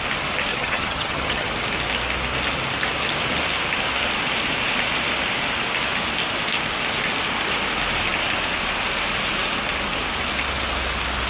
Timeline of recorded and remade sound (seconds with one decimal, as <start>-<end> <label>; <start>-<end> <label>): 0.0-0.5 recorded; 0.5-1.5 remade; 1.5-11.3 recorded